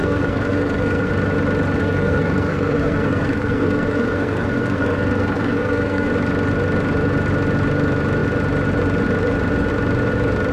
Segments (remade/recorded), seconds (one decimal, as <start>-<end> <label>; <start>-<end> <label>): 0.0-1.1 remade; 1.1-1.8 recorded; 1.8-6.1 remade; 6.1-10.5 recorded